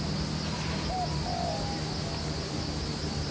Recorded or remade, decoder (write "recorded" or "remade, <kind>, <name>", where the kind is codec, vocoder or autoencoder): recorded